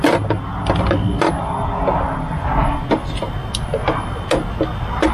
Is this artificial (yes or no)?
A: no